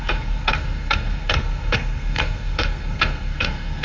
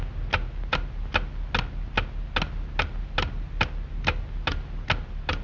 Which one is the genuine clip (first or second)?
second